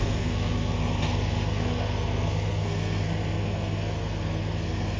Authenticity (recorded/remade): remade